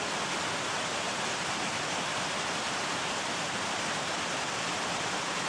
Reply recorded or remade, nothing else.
recorded